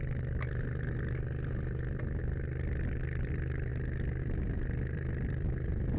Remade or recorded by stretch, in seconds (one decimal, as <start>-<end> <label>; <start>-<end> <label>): 0.0-6.0 recorded